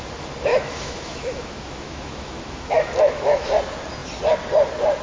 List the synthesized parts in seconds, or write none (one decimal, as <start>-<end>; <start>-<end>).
0.5-3.5